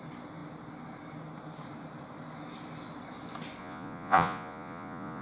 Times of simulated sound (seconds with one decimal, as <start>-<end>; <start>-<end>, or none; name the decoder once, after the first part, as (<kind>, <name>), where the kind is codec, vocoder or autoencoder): 3.6-5.2 (vocoder, Vocos)